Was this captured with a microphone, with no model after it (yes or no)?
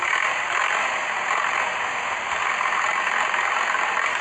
yes